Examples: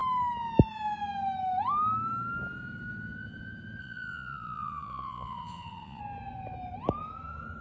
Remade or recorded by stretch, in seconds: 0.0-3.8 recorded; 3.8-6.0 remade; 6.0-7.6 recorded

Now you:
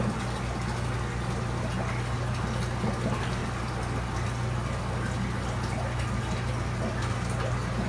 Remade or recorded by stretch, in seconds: 0.0-7.9 recorded

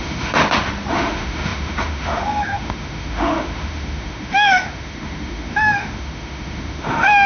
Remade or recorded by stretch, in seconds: 0.0-0.4 remade; 0.4-0.9 recorded; 0.9-7.3 remade

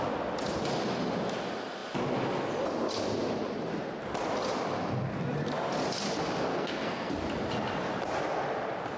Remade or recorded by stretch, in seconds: 0.0-6.5 recorded; 6.5-7.1 remade; 7.1-9.0 recorded

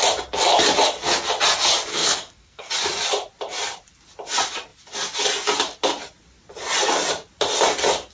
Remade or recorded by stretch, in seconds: 0.0-1.9 recorded; 1.9-2.7 remade; 2.7-8.1 recorded

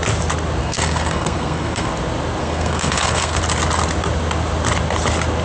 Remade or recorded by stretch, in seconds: 0.0-0.6 recorded; 0.6-1.9 remade; 1.9-2.4 recorded; 2.4-3.4 remade; 3.4-5.4 recorded

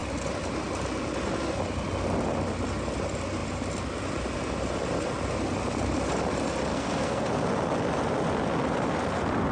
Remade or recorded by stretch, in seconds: 0.0-6.7 recorded; 6.7-7.3 remade; 7.3-9.5 recorded

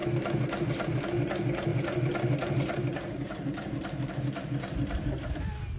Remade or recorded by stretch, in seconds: 0.0-1.7 recorded; 1.7-4.1 remade; 4.1-5.8 recorded